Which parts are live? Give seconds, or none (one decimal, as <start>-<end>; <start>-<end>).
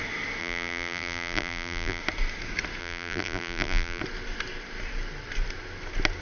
0.0-0.4; 2.0-2.8; 4.0-6.2